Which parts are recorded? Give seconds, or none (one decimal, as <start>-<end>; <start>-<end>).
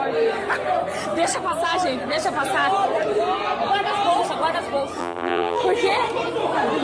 0.0-5.0; 5.6-6.8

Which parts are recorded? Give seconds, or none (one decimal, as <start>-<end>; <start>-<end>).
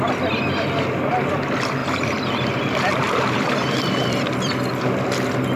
0.0-1.8; 4.8-5.6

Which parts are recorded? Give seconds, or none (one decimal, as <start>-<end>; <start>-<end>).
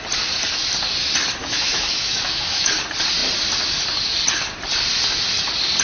0.0-1.4; 2.7-5.8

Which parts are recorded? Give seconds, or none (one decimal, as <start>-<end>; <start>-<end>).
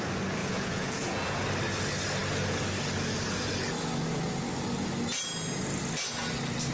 0.0-0.4; 1.4-6.7